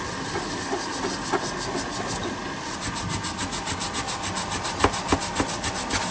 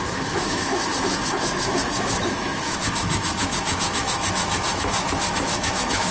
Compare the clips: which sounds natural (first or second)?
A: first